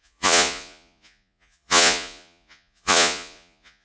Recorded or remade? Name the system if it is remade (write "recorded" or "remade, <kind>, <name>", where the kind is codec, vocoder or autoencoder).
remade, vocoder, Vocos